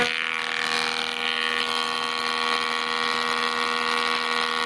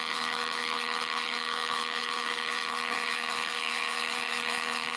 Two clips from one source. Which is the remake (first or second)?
second